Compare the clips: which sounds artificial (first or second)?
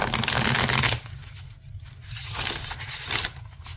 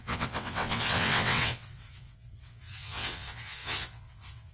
second